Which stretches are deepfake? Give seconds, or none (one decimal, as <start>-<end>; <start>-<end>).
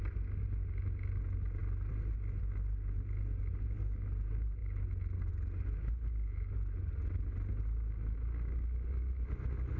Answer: none